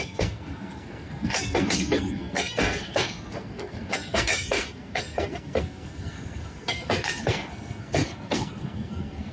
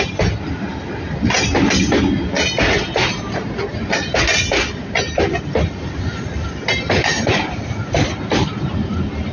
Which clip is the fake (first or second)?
first